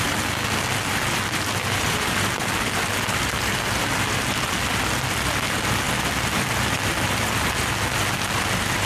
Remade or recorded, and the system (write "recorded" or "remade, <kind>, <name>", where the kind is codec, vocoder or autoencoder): recorded